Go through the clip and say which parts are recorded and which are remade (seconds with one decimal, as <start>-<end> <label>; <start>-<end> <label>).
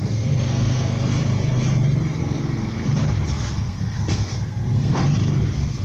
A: 0.0-1.1 remade; 1.1-2.2 recorded; 2.2-2.8 remade; 2.8-3.3 recorded; 3.3-5.0 remade; 5.0-5.8 recorded